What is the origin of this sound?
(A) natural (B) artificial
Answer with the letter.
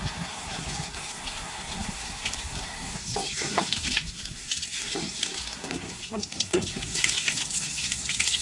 B